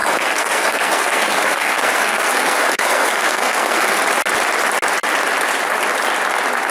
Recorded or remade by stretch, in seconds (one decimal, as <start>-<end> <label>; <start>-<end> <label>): 0.0-4.0 remade; 4.0-6.7 recorded